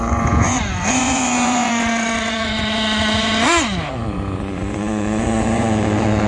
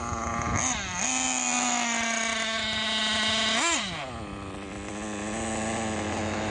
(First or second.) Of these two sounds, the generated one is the first